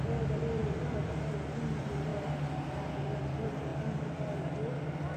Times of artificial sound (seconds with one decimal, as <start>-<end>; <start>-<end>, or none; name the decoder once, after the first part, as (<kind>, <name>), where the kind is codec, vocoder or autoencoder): 2.1-3.2 (vocoder, BigVGAN v2)